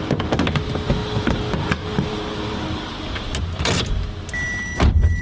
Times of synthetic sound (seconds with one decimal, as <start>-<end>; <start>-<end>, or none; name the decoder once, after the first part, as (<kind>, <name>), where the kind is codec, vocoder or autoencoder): none